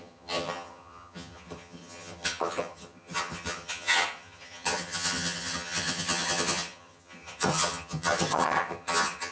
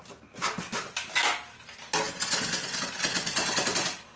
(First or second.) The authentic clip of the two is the second